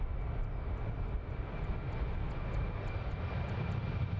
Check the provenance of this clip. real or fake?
real